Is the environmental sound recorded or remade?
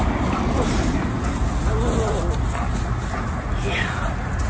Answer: recorded